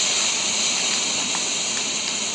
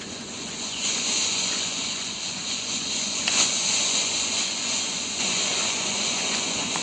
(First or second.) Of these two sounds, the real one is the first